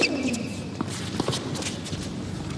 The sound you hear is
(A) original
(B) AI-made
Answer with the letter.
A